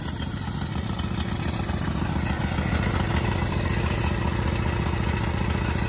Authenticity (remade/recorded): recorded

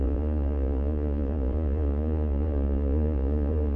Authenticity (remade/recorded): remade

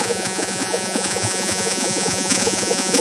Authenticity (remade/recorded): remade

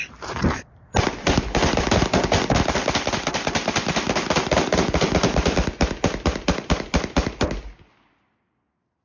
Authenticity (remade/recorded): recorded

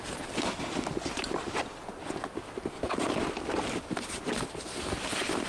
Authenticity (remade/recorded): recorded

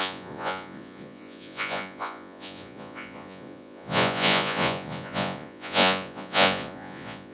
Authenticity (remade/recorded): remade